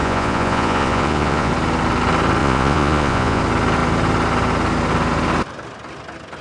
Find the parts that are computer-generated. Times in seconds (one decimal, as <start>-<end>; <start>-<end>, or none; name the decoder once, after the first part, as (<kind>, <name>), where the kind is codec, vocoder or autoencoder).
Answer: 0.0-1.5 (vocoder, Vocos); 2.4-3.4